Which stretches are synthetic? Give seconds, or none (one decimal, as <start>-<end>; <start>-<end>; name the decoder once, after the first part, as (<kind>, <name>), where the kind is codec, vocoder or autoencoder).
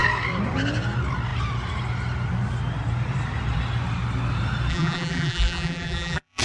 4.7-6.4 (vocoder, BigVGAN v2)